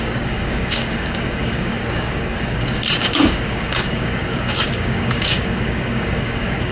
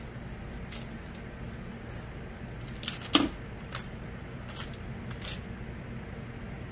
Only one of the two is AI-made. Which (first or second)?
first